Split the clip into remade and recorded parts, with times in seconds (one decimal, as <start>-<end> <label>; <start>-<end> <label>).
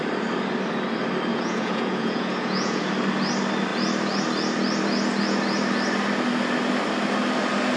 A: 0.0-1.3 recorded; 1.3-2.9 remade; 2.9-7.8 recorded